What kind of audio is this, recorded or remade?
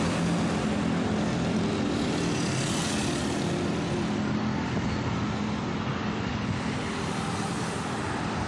recorded